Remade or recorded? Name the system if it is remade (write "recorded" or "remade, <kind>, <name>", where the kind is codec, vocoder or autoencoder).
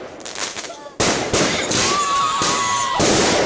remade, vocoder, BigVGAN v2